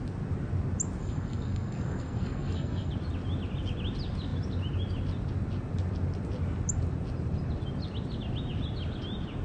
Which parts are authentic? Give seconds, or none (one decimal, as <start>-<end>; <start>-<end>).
0.0-1.0; 2.9-9.4